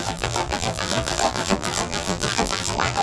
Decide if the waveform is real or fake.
fake